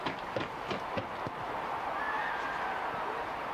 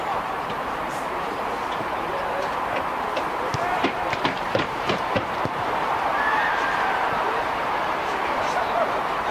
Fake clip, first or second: second